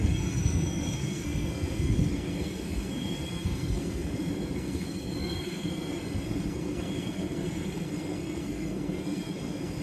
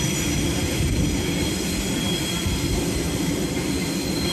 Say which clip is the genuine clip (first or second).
second